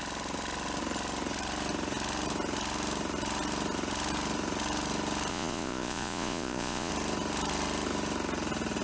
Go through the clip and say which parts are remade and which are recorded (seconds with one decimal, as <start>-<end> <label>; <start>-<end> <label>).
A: 0.0-5.3 recorded; 5.3-6.9 remade; 6.9-8.8 recorded